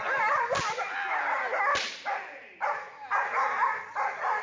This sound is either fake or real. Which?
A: real